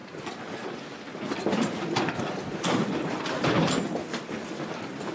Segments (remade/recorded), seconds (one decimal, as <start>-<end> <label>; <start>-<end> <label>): 0.0-5.1 remade